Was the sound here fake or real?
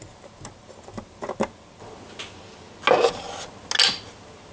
real